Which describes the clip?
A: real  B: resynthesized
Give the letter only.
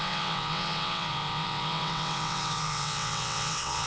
B